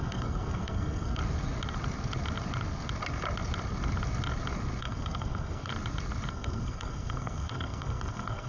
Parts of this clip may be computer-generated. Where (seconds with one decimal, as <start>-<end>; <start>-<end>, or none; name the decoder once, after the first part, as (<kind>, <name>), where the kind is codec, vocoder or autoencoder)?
0.0-1.2 (codec, SNAC); 4.8-5.7; 6.3-8.5